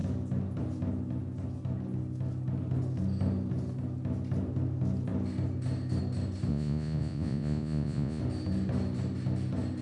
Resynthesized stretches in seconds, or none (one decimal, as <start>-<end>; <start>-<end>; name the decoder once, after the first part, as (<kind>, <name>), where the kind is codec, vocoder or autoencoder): 6.5-8.2 (vocoder, Vocos)